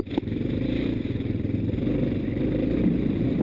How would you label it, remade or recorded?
recorded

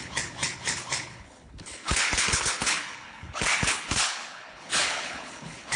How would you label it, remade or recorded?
remade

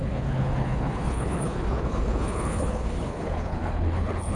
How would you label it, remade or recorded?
remade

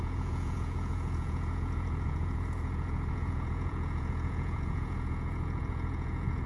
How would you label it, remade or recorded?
remade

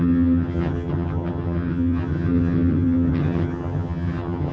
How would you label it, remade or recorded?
remade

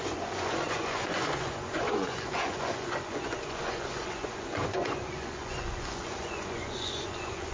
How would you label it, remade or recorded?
remade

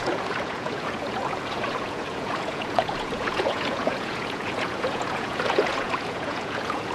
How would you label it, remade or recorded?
remade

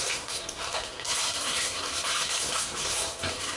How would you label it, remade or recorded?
remade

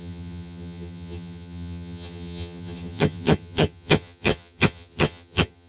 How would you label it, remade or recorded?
remade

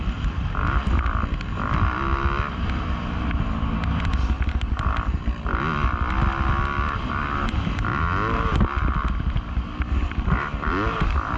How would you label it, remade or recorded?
recorded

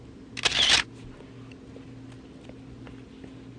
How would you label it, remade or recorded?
recorded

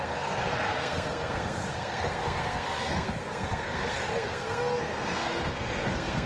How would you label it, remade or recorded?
remade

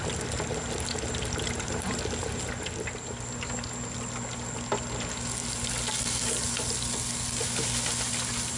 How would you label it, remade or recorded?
recorded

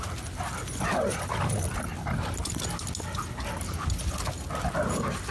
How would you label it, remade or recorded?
recorded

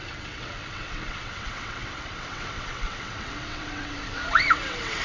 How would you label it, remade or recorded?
remade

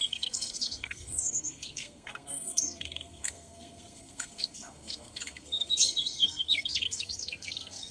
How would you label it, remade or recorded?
remade